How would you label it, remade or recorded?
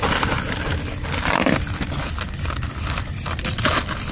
recorded